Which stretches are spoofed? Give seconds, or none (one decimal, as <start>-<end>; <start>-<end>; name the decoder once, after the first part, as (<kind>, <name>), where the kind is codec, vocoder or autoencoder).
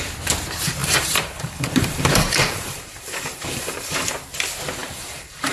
0.8-4.1 (vocoder, BigVGAN v2); 4.8-5.5